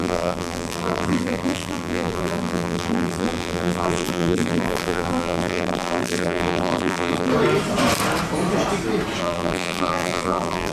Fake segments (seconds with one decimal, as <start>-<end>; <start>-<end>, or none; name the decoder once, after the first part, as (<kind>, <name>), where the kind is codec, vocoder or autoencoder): 0.0-7.3 (vocoder, BigVGAN v2); 9.2-10.7